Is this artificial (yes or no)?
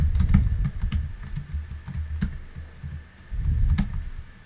no